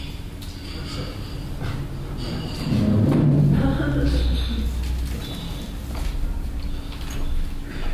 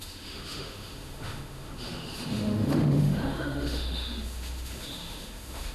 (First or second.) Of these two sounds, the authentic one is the first